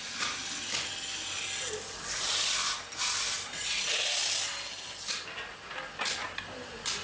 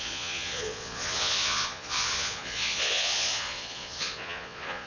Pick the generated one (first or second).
second